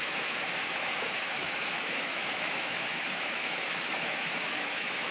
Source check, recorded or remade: remade